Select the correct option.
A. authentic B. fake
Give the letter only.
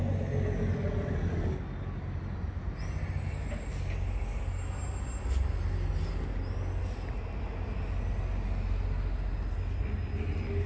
A